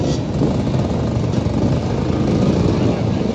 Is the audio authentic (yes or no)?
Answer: yes